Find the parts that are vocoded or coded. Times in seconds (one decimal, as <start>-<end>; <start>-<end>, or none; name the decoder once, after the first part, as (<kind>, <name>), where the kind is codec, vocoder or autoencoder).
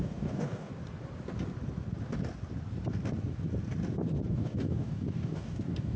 0.0-0.7 (codec, DAC); 4.3-6.0